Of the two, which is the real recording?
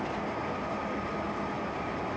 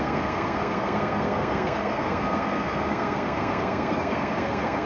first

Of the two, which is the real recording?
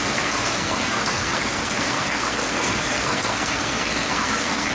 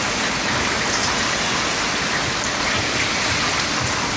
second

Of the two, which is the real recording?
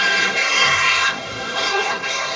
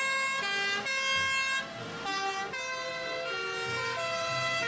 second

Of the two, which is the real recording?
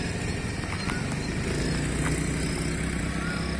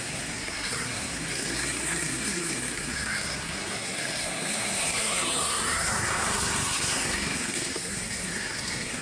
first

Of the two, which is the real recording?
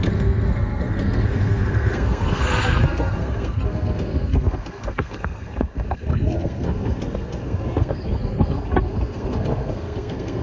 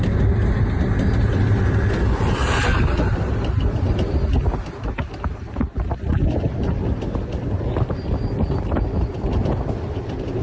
second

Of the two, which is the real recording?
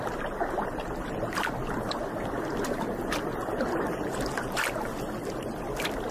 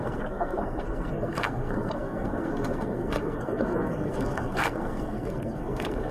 first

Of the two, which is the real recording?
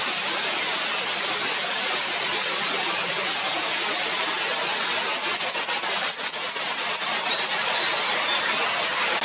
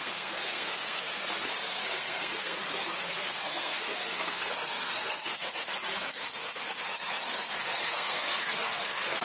first